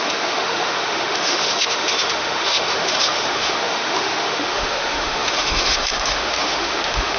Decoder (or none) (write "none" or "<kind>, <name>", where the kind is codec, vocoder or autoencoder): autoencoder, DAC-VAE